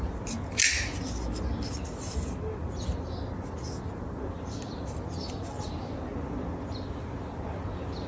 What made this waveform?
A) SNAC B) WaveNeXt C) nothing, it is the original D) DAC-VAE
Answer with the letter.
C